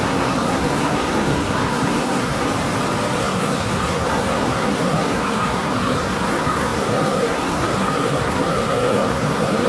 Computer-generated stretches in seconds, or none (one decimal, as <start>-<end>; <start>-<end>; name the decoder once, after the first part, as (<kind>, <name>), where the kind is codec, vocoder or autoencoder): 0.0-2.5 (codec, SNAC); 3.2-9.7